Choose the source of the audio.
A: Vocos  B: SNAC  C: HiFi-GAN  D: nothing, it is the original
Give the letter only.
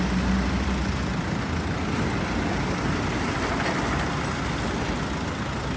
D